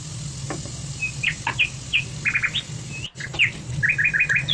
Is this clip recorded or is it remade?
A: recorded